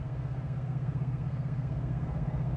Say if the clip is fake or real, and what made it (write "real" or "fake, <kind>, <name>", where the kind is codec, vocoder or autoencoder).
fake, codec, SNAC